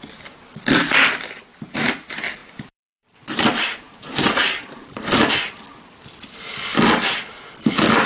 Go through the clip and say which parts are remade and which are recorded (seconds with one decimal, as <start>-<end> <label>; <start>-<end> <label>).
0.0-0.8 recorded; 0.8-1.3 remade; 1.3-2.4 recorded; 2.4-5.3 remade; 5.3-8.1 recorded